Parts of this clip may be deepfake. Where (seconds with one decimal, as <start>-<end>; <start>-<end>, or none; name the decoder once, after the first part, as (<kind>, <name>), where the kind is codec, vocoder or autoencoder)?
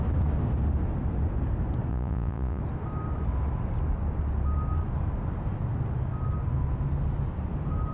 1.9-2.6 (vocoder, Vocos)